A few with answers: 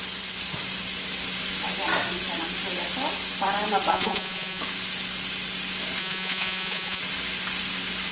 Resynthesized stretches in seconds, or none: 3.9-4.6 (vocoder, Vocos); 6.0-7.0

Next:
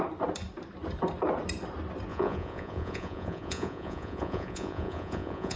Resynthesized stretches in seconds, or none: 2.1-5.6 (vocoder, Vocos)